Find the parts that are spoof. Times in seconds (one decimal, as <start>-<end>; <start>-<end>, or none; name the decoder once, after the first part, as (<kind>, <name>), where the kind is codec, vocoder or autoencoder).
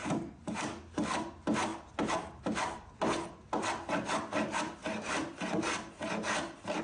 none